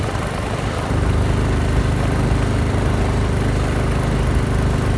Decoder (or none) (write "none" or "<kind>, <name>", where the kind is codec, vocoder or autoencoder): none